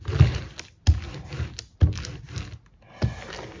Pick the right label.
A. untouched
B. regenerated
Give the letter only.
A